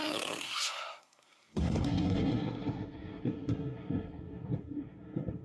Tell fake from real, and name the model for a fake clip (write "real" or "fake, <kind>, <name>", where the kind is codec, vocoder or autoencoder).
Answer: fake, codec, SNAC